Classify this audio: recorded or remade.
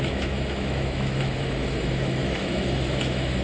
remade